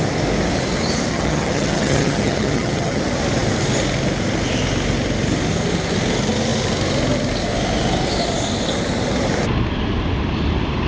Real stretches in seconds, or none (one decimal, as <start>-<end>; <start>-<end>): 0.0-1.1; 3.0-10.9

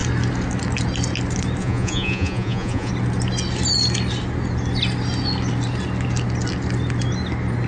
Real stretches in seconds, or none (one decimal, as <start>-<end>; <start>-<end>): 0.0-1.6; 2.9-7.7

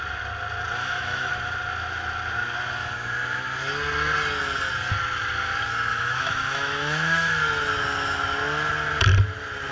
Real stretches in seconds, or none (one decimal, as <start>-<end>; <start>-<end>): 0.0-0.8; 1.3-5.9; 7.4-9.7